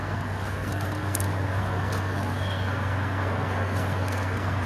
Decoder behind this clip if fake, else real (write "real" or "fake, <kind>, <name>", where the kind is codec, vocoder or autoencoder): fake, codec, SNAC